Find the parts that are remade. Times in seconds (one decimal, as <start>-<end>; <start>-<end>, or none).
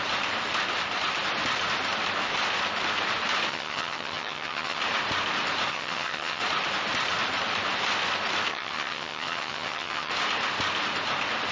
3.5-4.8; 5.7-6.4; 8.5-10.1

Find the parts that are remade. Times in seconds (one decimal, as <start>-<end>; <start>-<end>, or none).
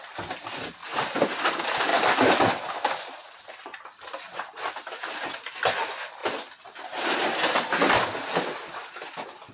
none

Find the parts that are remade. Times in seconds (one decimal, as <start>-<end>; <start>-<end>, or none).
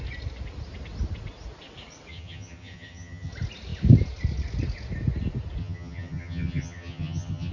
2.1-3.3; 5.6-7.5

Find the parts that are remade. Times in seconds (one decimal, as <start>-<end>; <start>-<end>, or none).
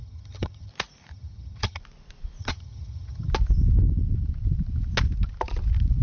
0.0-0.7; 1.1-1.8; 2.4-3.3